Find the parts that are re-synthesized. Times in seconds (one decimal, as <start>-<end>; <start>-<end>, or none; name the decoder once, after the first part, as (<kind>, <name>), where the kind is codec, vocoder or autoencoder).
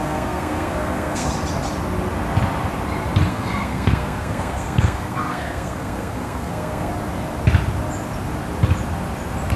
0.0-1.3 (codec, SNAC); 3.3-6.9